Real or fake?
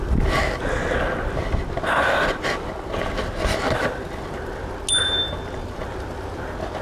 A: real